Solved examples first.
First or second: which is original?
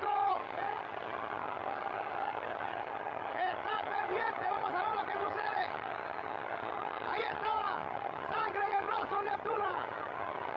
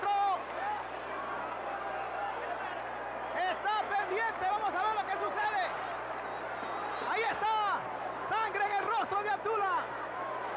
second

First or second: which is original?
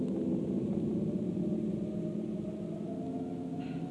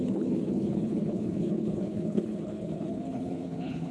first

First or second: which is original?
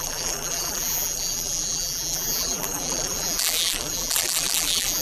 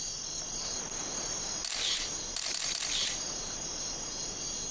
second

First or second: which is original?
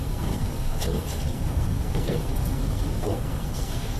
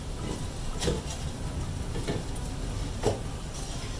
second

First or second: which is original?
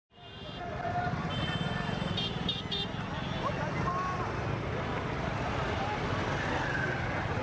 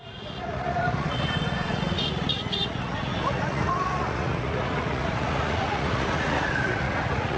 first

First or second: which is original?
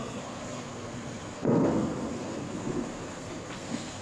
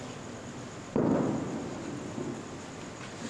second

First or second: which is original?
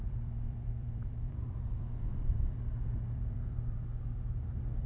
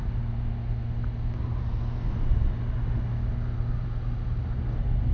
second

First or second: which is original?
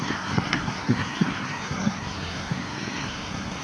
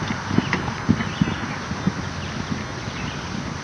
second